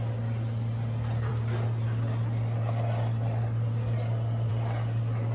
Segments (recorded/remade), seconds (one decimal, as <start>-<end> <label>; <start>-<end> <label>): 0.0-5.3 recorded